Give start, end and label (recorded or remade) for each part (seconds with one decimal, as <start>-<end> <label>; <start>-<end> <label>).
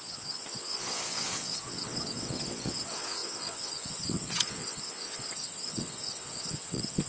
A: 0.0-7.1 remade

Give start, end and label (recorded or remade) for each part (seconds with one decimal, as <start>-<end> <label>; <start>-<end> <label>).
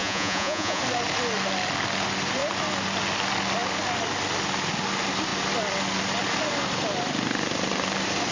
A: 0.0-0.8 remade; 0.8-8.3 recorded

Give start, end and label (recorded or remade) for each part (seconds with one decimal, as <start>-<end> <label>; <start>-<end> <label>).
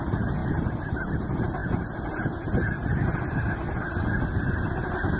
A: 0.0-5.2 recorded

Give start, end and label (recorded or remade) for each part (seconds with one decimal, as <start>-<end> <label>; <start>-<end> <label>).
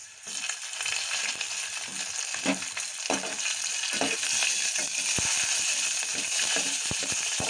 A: 0.0-6.1 recorded; 6.1-7.5 remade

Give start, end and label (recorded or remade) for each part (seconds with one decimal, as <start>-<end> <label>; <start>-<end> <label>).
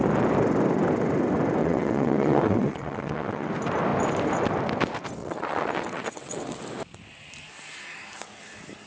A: 0.0-1.6 recorded; 1.6-3.5 remade; 3.5-5.2 recorded; 5.2-6.6 remade; 6.6-8.9 recorded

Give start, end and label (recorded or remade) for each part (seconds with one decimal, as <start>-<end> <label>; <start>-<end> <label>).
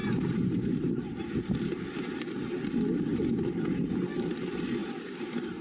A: 0.0-1.0 remade; 1.0-4.8 recorded; 4.8-5.6 remade